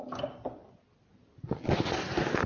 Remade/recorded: recorded